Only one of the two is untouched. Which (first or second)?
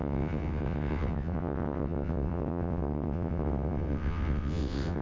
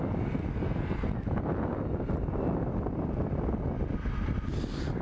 second